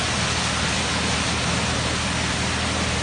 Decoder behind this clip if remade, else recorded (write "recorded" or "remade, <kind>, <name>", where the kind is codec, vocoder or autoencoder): recorded